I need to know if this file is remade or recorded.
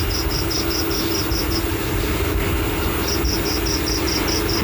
recorded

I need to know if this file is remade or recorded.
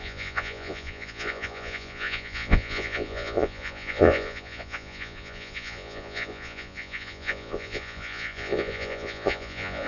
remade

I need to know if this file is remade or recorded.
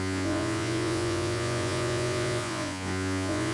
remade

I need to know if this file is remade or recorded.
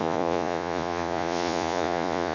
remade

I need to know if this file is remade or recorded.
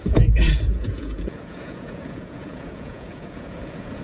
remade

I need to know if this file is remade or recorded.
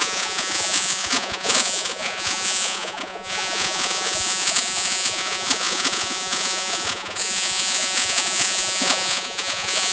remade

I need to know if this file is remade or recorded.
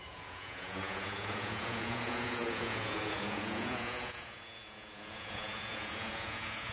remade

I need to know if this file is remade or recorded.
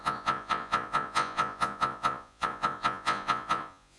remade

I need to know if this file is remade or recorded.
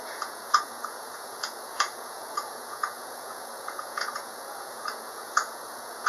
remade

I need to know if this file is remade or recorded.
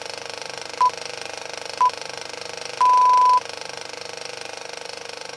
recorded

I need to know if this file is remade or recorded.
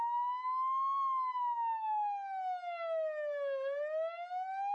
recorded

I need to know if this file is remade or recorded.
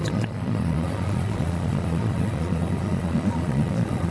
remade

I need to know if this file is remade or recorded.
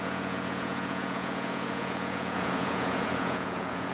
remade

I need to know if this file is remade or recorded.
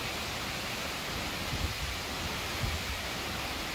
recorded